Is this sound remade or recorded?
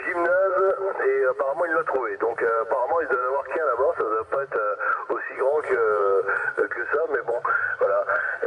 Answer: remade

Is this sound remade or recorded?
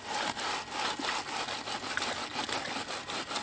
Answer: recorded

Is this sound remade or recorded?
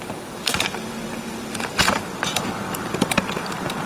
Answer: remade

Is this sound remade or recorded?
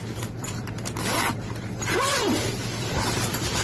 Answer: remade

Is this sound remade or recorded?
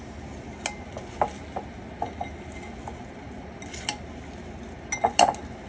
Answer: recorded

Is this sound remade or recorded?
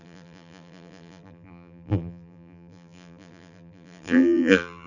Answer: remade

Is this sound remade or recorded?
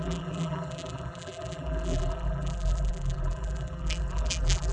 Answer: remade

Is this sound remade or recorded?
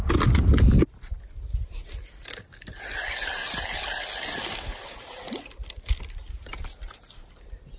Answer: recorded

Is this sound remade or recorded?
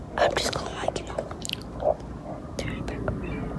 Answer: recorded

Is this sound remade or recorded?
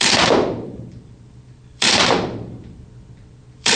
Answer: remade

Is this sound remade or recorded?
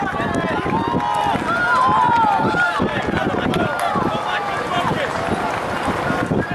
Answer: recorded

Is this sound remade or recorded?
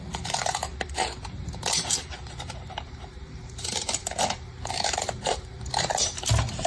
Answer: remade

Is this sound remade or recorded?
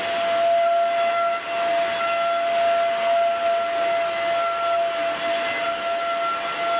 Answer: recorded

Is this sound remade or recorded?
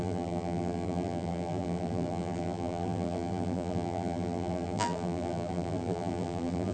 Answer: remade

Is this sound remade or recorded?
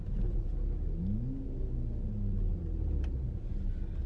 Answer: recorded